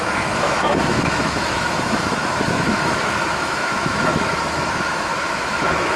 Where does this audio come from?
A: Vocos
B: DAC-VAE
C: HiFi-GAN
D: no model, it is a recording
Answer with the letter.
B